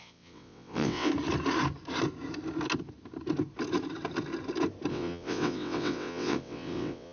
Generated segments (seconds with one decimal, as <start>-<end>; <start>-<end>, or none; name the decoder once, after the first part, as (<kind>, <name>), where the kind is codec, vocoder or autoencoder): 0.0-1.1 (vocoder, WaveNeXt); 4.9-7.1